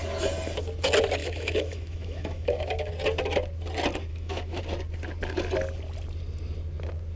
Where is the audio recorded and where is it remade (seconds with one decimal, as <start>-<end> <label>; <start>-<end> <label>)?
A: 0.0-1.2 recorded; 1.2-2.9 remade; 2.9-4.1 recorded; 4.1-4.6 remade; 4.6-7.2 recorded